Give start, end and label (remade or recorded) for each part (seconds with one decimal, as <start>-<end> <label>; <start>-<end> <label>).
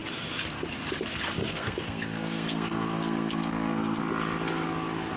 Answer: 0.0-1.5 recorded; 1.5-4.0 remade; 4.0-5.2 recorded